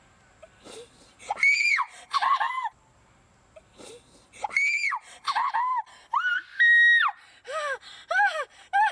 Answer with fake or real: real